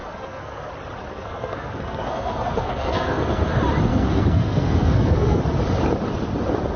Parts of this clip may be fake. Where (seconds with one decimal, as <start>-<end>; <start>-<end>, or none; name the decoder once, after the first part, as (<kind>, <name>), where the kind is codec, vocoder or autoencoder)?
0.0-0.7 (codec, SNAC); 1.1-3.5; 3.9-5.4